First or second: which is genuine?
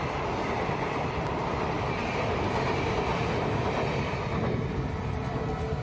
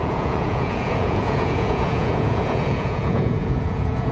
first